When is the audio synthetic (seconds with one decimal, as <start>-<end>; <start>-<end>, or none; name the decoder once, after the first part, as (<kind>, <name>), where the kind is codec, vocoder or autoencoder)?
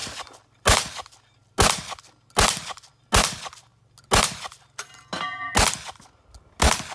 none